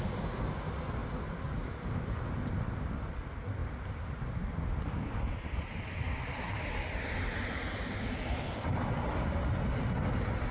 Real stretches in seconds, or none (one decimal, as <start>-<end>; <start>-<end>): 0.0-10.5